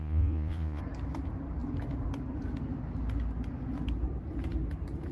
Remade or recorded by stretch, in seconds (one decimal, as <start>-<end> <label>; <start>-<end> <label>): 0.0-0.8 remade; 0.8-5.1 recorded